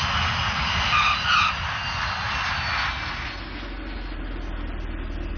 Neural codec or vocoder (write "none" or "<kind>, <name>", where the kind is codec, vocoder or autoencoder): none